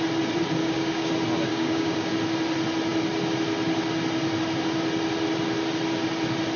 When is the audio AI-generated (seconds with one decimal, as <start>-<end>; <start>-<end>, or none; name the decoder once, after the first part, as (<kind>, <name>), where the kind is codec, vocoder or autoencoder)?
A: 0.6-1.1 (codec, DAC); 1.5-2.1